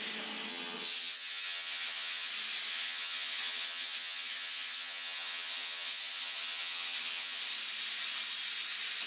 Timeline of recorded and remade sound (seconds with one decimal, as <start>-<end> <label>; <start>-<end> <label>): 0.0-0.5 recorded; 0.5-2.3 remade; 2.3-2.7 recorded; 2.7-7.4 remade; 7.4-9.1 recorded